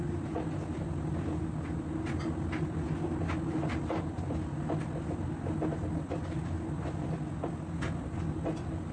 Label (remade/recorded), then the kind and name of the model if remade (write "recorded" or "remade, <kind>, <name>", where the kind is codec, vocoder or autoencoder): recorded